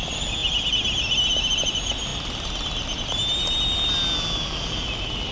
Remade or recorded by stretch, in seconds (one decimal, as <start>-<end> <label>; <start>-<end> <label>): 0.0-5.3 recorded